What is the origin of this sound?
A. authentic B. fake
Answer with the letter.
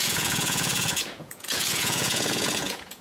B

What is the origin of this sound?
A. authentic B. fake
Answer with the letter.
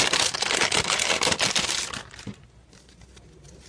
A